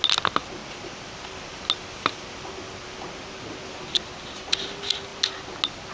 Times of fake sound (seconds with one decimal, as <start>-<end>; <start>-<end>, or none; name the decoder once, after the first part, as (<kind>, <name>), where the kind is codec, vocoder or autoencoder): none